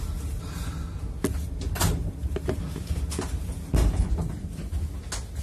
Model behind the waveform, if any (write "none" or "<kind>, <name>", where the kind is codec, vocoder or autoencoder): none